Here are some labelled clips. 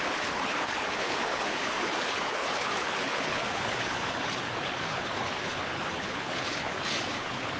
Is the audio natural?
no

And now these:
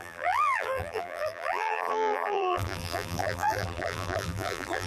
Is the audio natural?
no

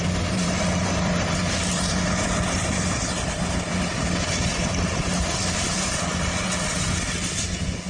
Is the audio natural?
no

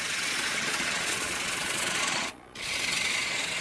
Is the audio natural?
no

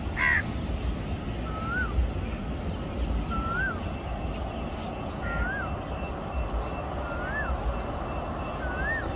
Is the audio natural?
yes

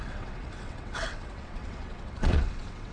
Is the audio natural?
no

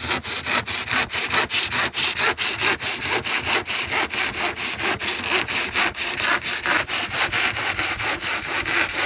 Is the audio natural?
yes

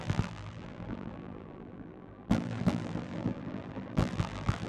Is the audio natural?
no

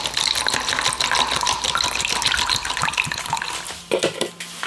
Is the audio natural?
yes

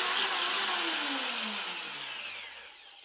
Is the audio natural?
yes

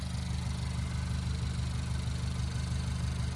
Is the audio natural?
yes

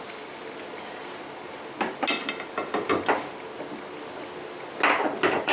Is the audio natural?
yes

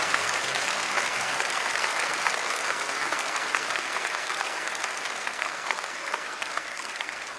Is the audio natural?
no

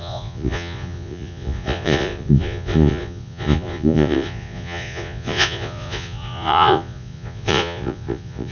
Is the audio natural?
no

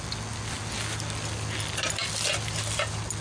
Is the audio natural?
yes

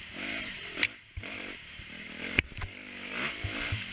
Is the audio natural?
no